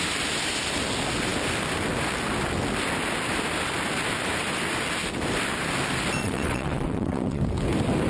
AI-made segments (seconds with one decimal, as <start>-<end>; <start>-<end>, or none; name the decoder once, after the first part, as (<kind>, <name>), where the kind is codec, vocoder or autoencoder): 6.2-7.4 (vocoder, WaveNeXt)